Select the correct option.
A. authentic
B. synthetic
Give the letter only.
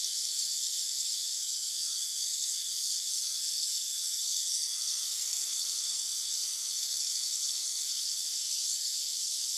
B